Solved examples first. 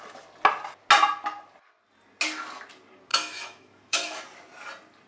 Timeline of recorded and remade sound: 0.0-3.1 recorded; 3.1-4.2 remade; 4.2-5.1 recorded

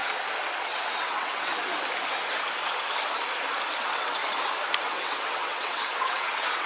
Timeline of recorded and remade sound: 0.0-0.6 recorded; 0.6-1.5 remade; 1.5-3.8 recorded; 3.8-4.2 remade; 4.2-4.9 recorded; 4.9-6.7 remade